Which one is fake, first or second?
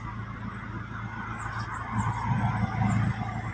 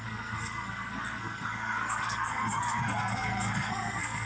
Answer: second